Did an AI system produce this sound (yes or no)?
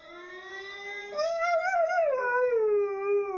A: yes